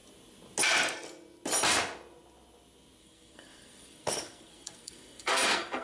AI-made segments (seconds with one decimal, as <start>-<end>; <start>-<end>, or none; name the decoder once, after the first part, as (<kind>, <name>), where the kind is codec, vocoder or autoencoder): 3.0-5.8 (codec, SNAC)